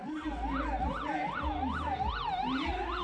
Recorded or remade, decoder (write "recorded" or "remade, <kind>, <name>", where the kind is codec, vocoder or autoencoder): recorded